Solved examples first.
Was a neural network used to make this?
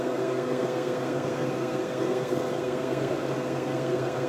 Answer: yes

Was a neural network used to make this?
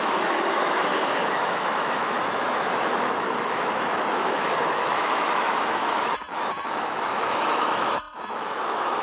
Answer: yes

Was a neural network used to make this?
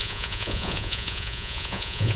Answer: yes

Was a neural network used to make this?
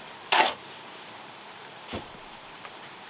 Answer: yes